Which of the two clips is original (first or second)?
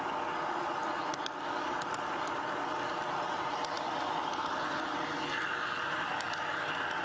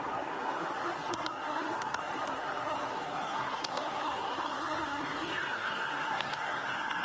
first